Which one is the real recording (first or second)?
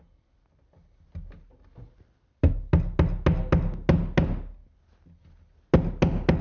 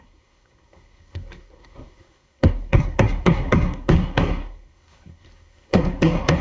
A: first